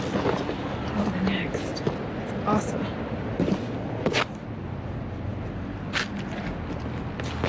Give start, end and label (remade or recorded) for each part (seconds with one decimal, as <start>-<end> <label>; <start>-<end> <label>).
0.0-7.5 recorded